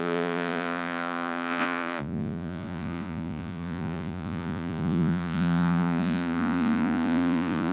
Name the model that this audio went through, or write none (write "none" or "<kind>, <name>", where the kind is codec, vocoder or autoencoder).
vocoder, Vocos